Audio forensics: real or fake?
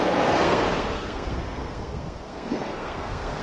fake